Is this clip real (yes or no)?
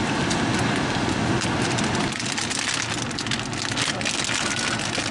yes